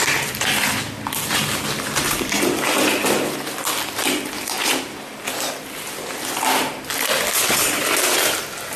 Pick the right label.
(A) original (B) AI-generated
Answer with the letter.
A